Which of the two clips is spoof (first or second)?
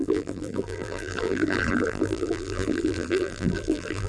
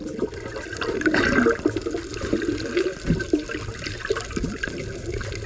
first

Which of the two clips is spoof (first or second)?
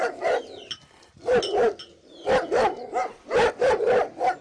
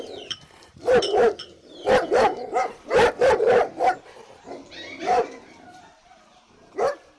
second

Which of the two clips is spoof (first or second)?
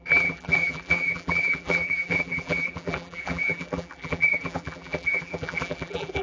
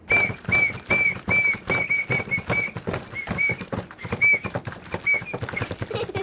first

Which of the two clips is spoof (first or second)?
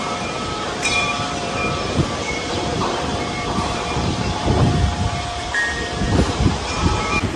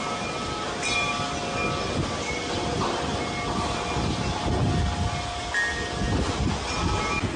first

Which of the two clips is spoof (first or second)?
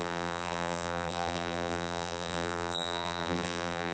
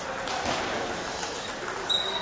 first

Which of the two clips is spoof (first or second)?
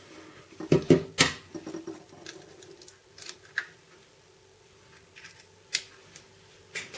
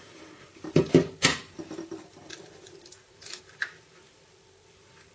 second